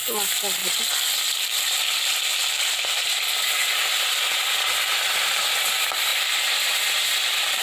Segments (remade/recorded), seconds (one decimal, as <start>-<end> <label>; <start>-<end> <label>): 0.0-0.6 recorded; 0.6-2.2 remade; 2.2-7.6 recorded